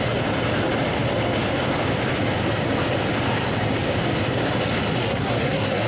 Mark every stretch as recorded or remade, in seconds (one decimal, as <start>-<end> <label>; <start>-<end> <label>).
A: 0.0-5.0 recorded; 5.0-5.9 remade